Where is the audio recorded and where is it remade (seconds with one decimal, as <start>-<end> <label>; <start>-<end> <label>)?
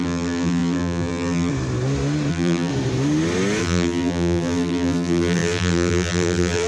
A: 0.0-1.5 remade; 1.5-2.3 recorded; 2.3-2.7 remade; 2.7-3.6 recorded; 3.6-6.7 remade